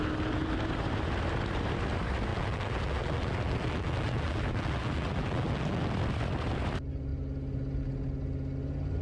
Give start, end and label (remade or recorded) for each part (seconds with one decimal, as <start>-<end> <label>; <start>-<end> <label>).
0.0-2.3 recorded; 2.3-5.9 remade; 5.9-9.0 recorded